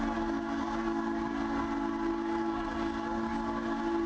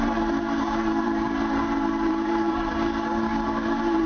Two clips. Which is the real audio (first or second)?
first